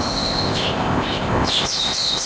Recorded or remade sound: remade